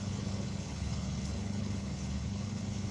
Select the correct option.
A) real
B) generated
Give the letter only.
B